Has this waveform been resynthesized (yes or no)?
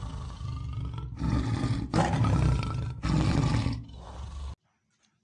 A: no